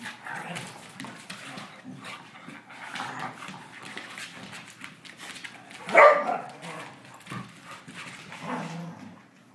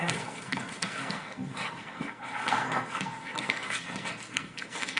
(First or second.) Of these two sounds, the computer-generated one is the second